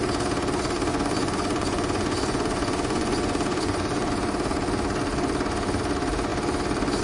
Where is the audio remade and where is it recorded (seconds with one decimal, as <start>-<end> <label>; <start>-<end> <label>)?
0.0-0.9 recorded; 0.9-4.1 remade; 4.1-7.0 recorded